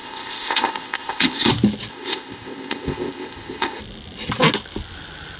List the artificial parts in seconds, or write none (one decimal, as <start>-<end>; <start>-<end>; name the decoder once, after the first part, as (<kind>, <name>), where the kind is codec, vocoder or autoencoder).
0.0-1.5 (codec, ZipCodec); 1.9-3.8